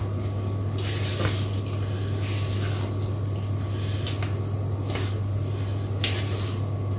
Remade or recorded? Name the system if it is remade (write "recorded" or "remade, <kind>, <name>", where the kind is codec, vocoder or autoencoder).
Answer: recorded